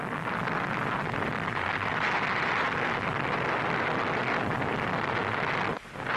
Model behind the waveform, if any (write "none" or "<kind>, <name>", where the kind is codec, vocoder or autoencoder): none